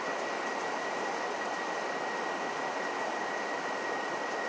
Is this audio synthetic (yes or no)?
no